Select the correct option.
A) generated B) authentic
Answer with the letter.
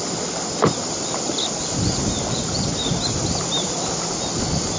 B